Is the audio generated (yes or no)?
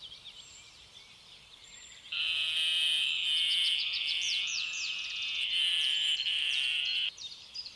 yes